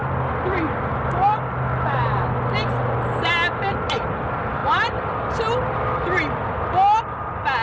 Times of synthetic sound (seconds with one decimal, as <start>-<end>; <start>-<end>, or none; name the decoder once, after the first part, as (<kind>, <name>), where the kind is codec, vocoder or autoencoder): none